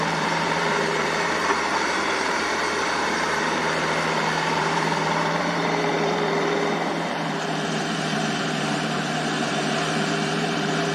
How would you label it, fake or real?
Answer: fake